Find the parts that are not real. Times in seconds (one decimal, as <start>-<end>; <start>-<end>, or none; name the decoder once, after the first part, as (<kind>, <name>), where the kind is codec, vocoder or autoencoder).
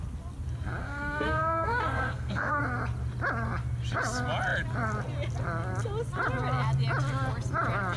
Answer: 0.8-2.6 (codec, SNAC)